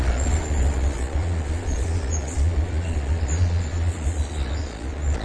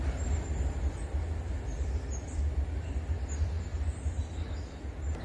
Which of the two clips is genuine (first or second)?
second